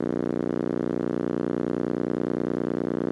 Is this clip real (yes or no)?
yes